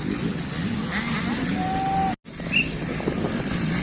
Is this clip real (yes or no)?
yes